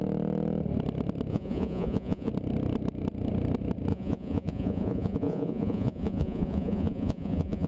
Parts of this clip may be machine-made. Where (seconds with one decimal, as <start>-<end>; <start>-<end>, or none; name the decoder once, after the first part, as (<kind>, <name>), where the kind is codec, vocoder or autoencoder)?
1.3-2.3 (vocoder, Vocos); 3.9-7.7